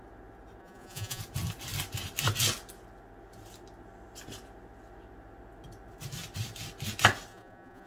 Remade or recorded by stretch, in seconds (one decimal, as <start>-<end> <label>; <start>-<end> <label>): 0.0-0.6 recorded; 0.6-1.2 remade; 1.2-7.3 recorded; 7.3-7.9 remade